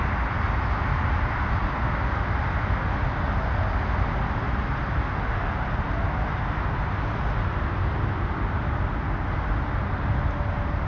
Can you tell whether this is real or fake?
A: real